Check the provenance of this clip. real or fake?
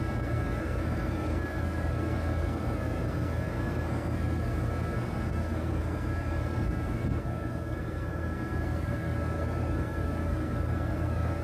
fake